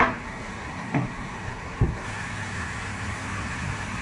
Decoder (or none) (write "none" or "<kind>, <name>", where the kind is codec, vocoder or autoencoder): codec, SNAC